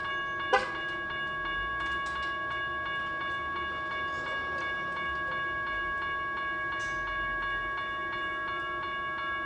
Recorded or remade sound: recorded